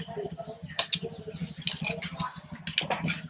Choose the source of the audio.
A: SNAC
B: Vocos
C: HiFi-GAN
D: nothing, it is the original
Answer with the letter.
D